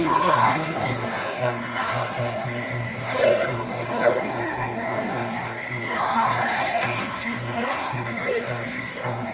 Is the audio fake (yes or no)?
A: yes